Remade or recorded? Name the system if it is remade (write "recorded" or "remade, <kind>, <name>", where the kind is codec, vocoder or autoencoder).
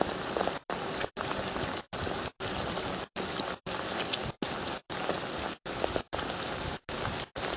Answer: recorded